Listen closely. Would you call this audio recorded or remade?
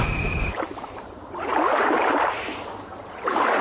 remade